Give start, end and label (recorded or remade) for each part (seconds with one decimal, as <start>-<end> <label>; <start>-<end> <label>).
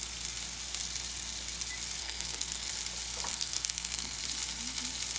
0.0-2.0 recorded; 2.0-2.7 remade; 2.7-3.3 recorded; 3.3-4.2 remade; 4.2-5.2 recorded